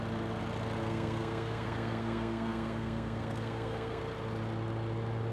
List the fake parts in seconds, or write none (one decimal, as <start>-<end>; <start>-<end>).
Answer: 0.8-4.0